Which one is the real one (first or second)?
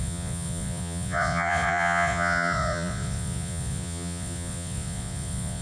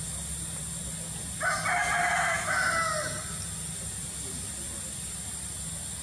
second